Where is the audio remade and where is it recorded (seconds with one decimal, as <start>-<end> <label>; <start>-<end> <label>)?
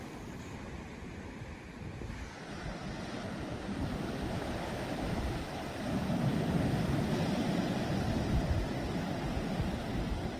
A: 0.0-10.4 recorded